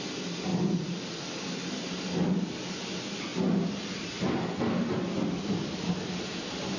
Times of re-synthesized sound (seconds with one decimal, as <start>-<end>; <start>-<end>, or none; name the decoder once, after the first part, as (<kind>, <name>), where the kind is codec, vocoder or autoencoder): none